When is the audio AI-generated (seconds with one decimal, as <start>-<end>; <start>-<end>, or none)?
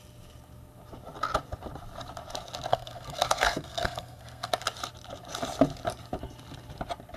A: 2.7-4.5